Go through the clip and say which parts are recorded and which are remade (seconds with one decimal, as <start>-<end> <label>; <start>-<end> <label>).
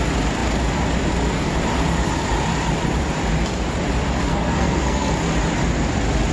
0.0-4.3 recorded; 4.3-5.1 remade; 5.1-6.3 recorded